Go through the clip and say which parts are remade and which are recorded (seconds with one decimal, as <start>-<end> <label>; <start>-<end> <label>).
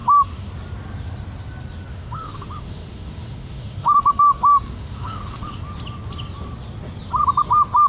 0.0-0.5 remade; 0.5-1.9 recorded; 1.9-5.6 remade; 5.6-7.9 recorded